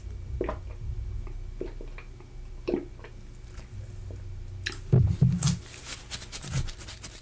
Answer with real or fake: real